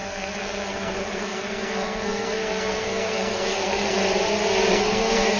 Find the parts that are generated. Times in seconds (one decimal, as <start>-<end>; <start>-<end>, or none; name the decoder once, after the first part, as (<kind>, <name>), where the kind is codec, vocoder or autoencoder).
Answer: 0.0-4.0 (codec, SNAC); 4.7-5.4